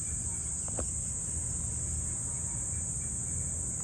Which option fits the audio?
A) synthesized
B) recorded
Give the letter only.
B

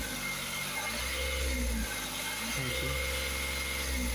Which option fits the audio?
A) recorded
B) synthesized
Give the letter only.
A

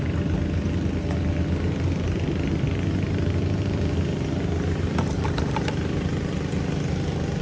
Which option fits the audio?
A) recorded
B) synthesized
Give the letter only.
A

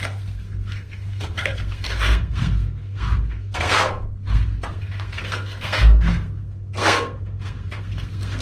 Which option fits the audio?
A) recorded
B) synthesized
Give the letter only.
B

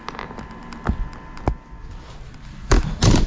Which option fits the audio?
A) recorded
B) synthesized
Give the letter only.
A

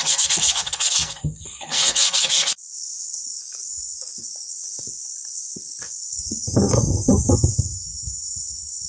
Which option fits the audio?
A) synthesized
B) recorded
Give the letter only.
A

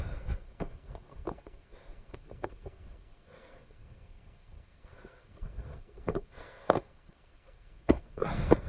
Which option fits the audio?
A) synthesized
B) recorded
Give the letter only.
A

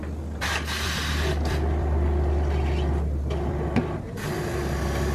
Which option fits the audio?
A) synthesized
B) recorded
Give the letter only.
B